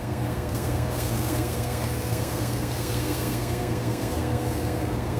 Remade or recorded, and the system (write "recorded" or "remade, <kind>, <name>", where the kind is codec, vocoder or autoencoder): remade, codec, SNAC